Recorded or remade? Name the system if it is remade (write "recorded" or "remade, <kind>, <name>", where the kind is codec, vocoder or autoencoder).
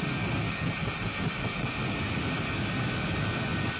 recorded